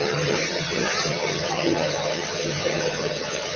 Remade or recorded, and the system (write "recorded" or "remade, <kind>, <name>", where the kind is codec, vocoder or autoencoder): remade, vocoder, HiFi-GAN